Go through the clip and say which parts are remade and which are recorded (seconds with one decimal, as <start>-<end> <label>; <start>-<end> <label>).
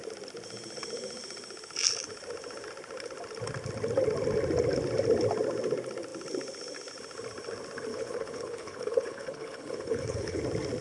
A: 0.0-7.9 recorded; 7.9-10.4 remade; 10.4-10.8 recorded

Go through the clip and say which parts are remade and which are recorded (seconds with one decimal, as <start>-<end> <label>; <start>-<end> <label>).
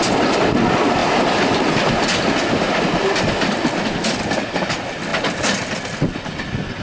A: 0.0-6.8 recorded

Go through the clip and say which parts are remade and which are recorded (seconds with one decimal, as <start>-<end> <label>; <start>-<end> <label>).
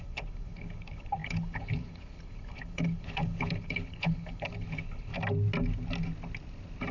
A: 0.0-5.1 remade; 5.1-6.9 recorded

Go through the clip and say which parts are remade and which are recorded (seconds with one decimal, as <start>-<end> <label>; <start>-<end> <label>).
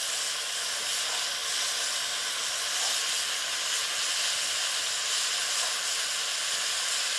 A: 0.0-7.2 recorded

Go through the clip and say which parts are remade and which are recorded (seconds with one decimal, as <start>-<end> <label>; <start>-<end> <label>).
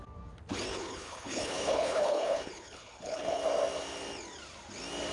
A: 0.0-0.7 recorded; 0.7-3.4 remade; 3.4-5.1 recorded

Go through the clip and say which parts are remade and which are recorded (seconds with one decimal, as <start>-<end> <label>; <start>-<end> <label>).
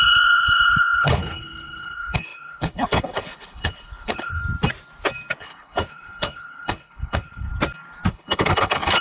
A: 0.0-4.4 remade; 4.4-5.4 recorded; 5.4-7.5 remade; 7.5-8.1 recorded; 8.1-9.0 remade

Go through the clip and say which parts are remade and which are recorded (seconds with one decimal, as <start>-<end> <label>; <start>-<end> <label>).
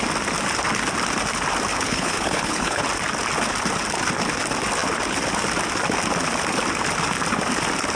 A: 0.0-1.7 recorded; 1.7-2.8 remade; 2.8-8.0 recorded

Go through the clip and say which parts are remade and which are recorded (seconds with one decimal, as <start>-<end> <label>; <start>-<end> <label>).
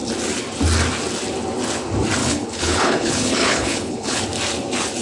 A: 0.0-2.2 recorded; 2.2-4.2 remade; 4.2-5.0 recorded